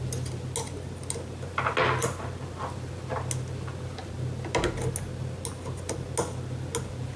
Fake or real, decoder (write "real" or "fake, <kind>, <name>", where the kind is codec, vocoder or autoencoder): real